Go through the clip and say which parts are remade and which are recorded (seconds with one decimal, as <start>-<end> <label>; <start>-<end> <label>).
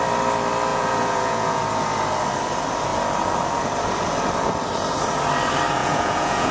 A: 0.0-0.7 recorded; 0.7-1.6 remade; 1.6-5.8 recorded; 5.8-6.5 remade